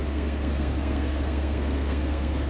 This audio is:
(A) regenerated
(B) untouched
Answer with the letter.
A